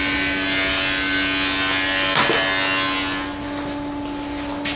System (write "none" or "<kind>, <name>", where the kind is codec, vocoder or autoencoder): none